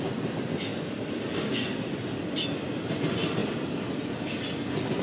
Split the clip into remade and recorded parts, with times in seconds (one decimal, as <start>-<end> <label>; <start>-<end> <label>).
0.0-5.0 recorded